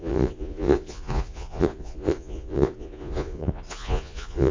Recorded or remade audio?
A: remade